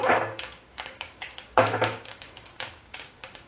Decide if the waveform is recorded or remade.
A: remade